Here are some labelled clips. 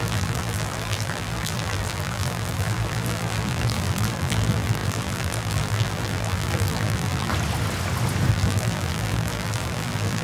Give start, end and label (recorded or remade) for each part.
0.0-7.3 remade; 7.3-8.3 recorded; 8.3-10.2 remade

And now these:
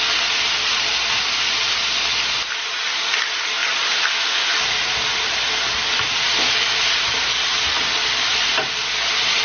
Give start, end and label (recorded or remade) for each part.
0.0-3.6 recorded; 3.6-7.0 remade; 7.0-8.3 recorded; 8.3-8.9 remade; 8.9-9.4 recorded

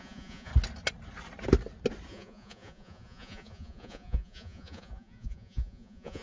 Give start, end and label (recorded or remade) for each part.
0.0-0.5 remade; 0.5-2.1 recorded; 2.1-6.2 remade

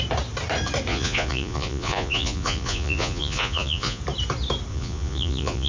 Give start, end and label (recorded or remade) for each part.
0.0-0.9 recorded; 0.9-4.0 remade; 4.0-4.7 recorded; 4.7-5.7 remade

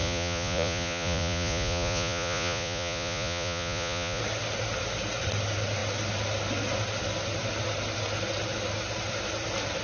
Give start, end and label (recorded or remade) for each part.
0.0-4.2 remade; 4.2-9.8 recorded

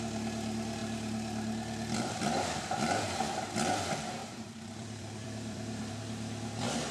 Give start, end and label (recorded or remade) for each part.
0.0-0.8 recorded; 0.8-2.2 remade; 2.2-4.2 recorded; 4.2-5.9 remade; 5.9-6.9 recorded

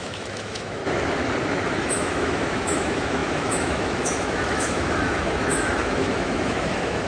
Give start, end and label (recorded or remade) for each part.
0.0-0.8 remade; 0.8-1.8 recorded; 1.8-7.1 remade

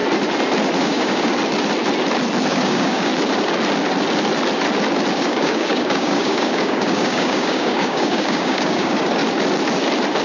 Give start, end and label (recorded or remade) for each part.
0.0-0.8 recorded; 0.8-1.3 remade; 1.3-2.5 recorded; 2.5-3.1 remade; 3.1-5.1 recorded; 5.1-9.2 remade; 9.2-10.2 recorded